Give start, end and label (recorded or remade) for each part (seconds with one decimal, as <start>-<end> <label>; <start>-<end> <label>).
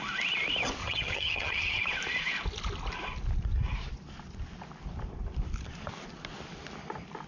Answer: 0.0-0.8 recorded; 0.8-1.8 remade; 1.8-7.3 recorded